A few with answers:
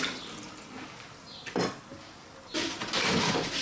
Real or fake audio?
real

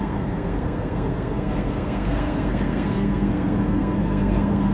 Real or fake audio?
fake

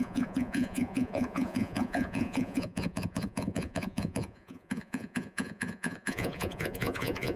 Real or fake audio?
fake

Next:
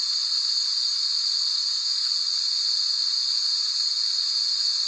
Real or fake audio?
real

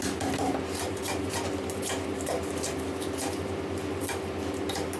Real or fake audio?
real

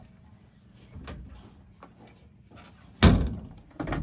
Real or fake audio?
real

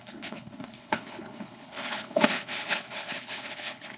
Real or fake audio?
fake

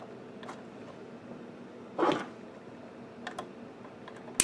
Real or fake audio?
real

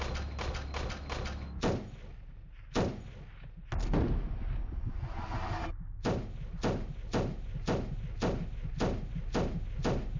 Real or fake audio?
real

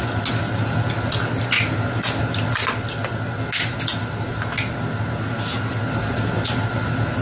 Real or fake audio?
real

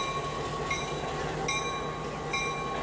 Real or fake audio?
real